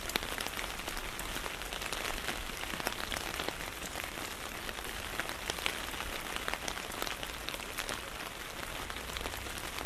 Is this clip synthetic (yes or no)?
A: no